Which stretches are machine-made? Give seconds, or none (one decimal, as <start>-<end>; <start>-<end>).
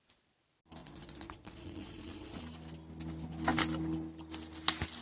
0.8-2.4